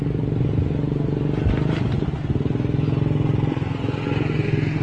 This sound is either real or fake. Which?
real